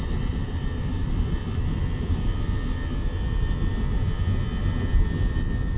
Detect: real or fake real